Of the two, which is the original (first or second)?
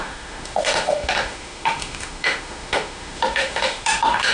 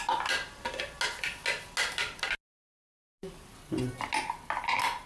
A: second